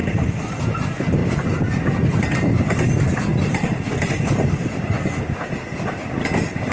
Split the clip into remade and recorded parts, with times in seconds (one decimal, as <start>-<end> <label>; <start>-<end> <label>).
0.0-6.7 recorded